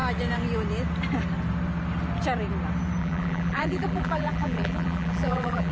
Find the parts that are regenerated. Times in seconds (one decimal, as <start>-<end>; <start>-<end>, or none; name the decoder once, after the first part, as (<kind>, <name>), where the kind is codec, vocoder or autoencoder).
3.0-5.7 (vocoder, BigVGAN v2)